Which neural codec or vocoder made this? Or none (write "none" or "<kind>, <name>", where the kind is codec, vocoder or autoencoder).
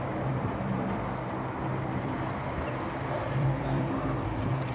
vocoder, BigVGAN v2